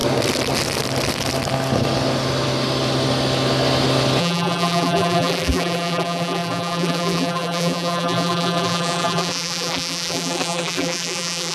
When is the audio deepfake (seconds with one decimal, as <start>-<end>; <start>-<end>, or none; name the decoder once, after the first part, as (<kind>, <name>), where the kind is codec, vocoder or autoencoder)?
4.2-11.5 (vocoder, BigVGAN v2)